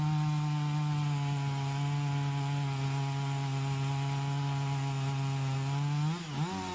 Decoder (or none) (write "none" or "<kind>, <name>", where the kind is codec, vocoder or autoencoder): none